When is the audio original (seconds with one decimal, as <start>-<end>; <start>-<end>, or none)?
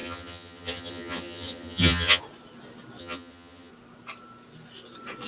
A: 2.2-3.0; 3.7-5.3